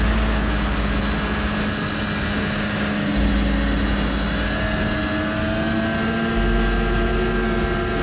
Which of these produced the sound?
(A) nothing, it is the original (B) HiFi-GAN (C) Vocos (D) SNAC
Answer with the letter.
A